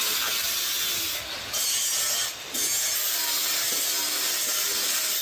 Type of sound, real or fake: real